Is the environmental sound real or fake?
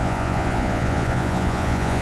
fake